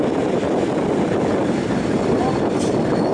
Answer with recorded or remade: recorded